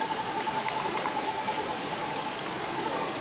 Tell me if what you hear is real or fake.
fake